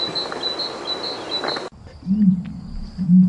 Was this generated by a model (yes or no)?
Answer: no